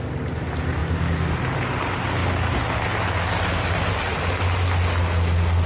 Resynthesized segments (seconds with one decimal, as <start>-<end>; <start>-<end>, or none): none